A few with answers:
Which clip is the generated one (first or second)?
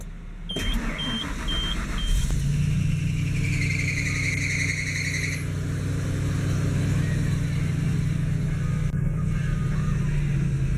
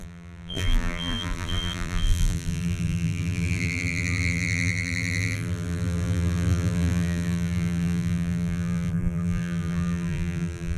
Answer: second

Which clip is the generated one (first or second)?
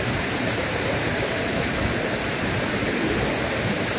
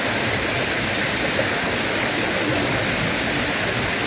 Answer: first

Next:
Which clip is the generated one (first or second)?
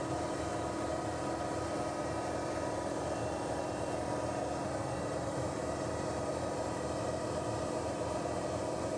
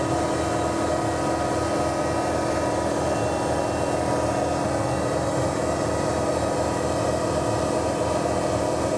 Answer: first